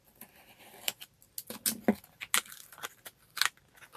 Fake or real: real